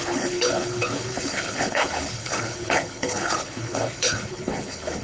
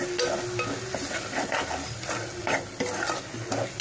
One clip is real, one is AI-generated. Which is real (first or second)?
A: second